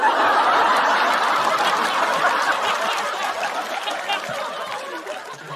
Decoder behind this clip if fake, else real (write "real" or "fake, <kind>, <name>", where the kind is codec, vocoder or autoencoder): real